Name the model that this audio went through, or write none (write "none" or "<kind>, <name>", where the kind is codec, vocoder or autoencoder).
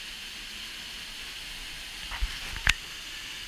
none